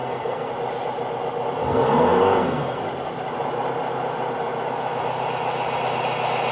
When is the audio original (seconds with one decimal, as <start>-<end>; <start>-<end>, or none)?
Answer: 0.5-1.6; 2.8-6.5